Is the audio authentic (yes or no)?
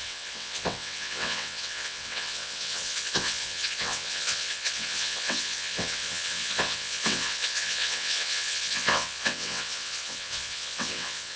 no